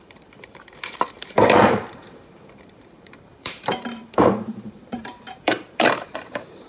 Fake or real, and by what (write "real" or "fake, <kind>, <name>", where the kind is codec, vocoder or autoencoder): fake, vocoder, BigVGAN v2